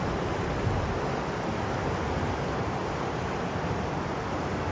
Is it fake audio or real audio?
real